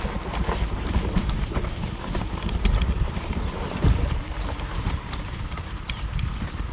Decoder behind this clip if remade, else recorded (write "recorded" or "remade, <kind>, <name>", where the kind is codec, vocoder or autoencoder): remade, vocoder, BigVGAN v2